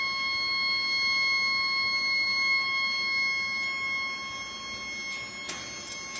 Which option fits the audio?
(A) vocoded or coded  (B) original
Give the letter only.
B